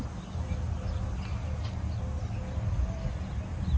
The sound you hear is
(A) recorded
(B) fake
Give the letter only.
A